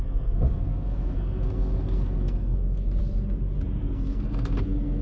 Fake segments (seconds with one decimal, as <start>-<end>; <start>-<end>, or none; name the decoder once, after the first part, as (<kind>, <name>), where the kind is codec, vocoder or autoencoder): 0.0-3.0 (codec, SNAC); 3.8-5.0